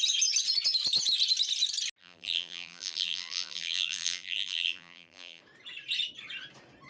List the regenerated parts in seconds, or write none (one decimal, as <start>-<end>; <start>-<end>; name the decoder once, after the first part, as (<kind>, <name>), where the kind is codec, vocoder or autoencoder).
2.0-5.4 (vocoder, BigVGAN v2)